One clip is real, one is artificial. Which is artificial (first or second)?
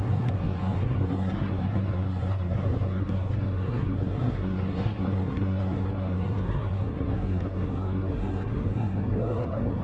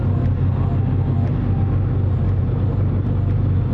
first